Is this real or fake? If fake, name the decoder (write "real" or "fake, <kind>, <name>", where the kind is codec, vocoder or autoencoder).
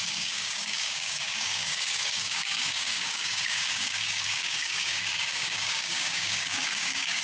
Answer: fake, codec, DAC